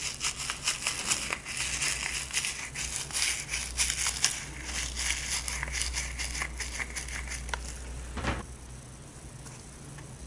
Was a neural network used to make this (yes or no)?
no